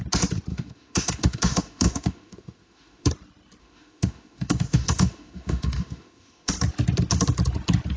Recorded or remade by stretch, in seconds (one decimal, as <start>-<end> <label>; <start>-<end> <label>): 0.0-0.5 recorded; 0.5-3.1 remade; 3.1-3.6 recorded; 3.6-6.5 remade; 6.5-8.0 recorded